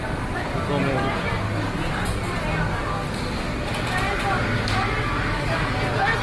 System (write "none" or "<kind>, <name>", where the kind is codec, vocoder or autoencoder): none